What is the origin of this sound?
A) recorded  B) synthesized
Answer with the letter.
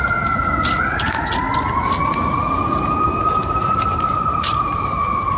A